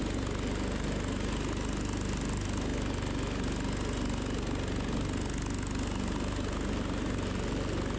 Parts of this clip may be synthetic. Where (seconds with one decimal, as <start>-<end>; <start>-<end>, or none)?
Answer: none